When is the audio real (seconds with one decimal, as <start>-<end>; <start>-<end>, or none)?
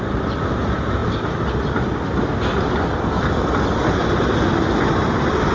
0.0-5.5